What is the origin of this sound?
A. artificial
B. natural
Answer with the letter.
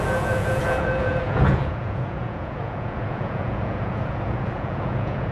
A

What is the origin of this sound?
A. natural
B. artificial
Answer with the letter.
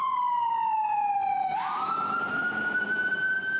B